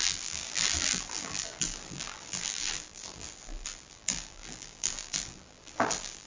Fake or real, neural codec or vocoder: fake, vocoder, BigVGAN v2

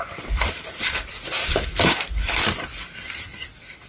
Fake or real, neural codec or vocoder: fake, vocoder, BigVGAN v2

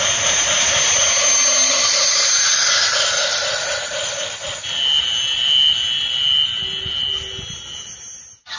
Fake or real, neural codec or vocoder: real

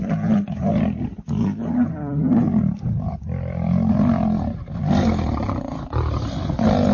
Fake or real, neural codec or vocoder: real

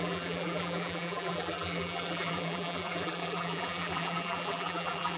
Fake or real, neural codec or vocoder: fake, vocoder, BigVGAN v2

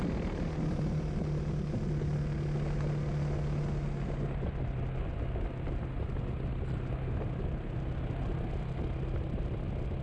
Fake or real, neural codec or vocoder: real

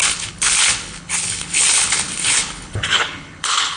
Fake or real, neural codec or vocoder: fake, codec, HILCodec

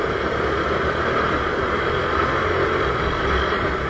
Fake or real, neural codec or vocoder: real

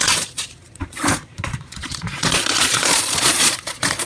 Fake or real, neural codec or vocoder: fake, vocoder, Vocos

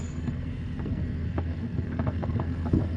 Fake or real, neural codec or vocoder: fake, codec, SNAC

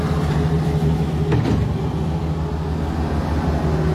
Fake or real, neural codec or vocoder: real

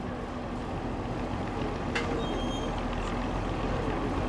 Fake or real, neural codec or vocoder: real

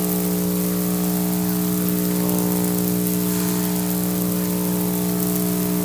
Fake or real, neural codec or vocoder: real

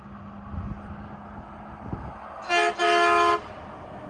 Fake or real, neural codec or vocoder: real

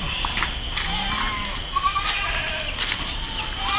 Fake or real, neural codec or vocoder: real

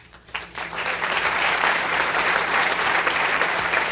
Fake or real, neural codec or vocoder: fake, vocoder, BigVGAN v2